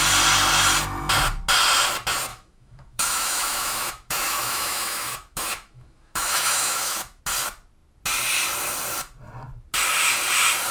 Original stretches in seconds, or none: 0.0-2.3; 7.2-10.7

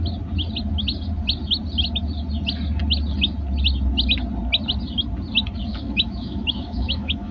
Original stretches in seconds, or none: 0.0-5.7

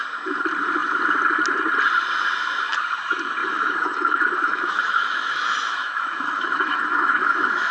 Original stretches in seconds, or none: 0.0-3.4

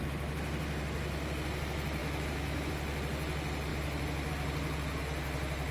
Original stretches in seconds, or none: 0.0-2.0; 2.7-5.7

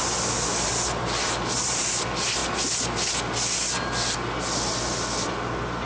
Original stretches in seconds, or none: 0.0-5.9

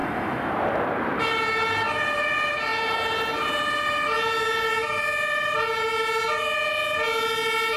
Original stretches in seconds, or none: 0.5-7.8

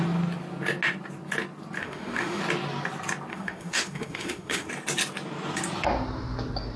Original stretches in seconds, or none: 0.0-1.8; 2.4-3.3; 4.7-6.8

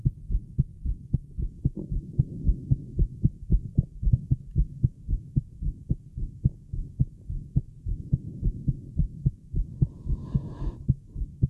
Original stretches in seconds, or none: none